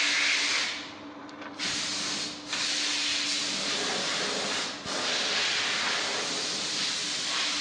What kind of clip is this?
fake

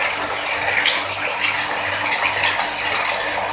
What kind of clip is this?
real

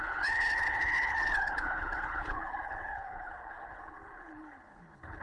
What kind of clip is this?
fake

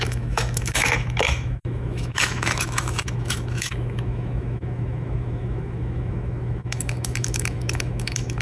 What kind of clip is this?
fake